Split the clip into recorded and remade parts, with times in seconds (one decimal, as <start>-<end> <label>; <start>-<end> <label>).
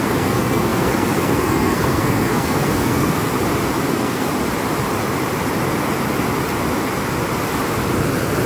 0.0-3.3 remade; 3.3-3.9 recorded; 3.9-4.3 remade; 4.3-8.5 recorded